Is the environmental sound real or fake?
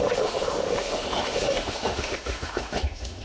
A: fake